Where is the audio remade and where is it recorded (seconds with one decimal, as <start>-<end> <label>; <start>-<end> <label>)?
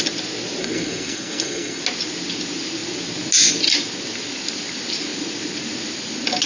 0.0-0.6 recorded; 0.6-1.8 remade; 1.8-6.5 recorded